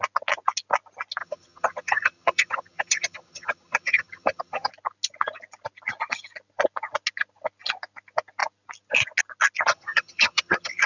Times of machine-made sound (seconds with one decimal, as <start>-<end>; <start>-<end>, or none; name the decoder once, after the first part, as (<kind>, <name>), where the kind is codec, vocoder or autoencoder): 1.2-4.7 (vocoder, HiFi-GAN); 9.7-10.9